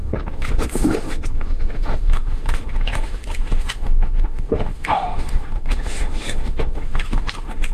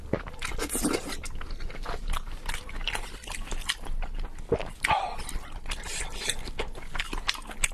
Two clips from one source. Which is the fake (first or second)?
first